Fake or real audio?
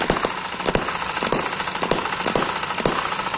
real